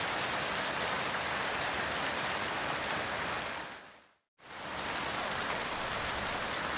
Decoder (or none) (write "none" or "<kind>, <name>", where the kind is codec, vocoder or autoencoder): none